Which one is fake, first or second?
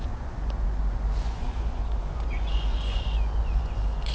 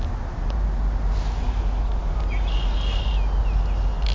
first